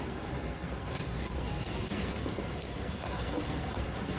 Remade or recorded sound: remade